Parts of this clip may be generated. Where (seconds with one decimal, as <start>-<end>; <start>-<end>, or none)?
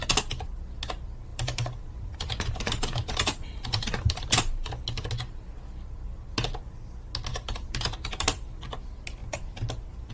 1.3-4.7; 7.3-8.4; 9.2-10.1